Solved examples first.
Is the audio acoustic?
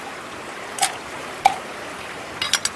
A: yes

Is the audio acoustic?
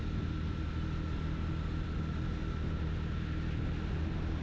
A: yes